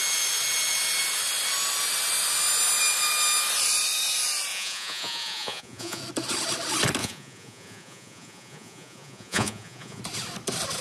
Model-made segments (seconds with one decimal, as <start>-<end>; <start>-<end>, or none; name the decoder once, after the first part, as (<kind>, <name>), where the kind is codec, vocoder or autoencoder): 4.5-6.0 (vocoder, Vocos); 7.0-10.0